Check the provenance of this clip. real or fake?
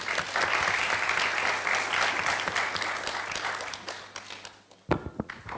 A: real